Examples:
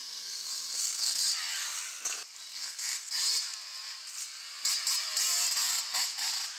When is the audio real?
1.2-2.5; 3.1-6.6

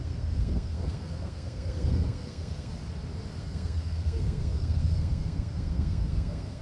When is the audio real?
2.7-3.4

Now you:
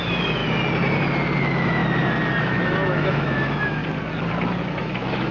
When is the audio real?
0.4-1.4; 1.8-2.4; 3.8-4.8